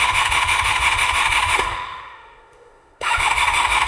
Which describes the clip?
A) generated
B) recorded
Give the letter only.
A